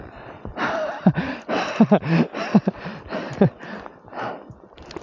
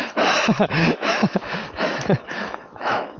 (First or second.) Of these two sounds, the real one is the first